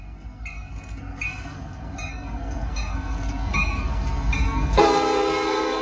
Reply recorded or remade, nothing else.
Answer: remade